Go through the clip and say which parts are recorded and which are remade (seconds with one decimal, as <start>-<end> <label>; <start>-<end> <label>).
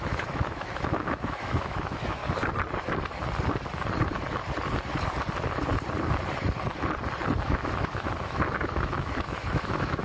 0.0-2.2 remade; 2.2-7.4 recorded; 7.4-10.0 remade